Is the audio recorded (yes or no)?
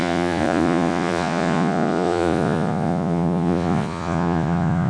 no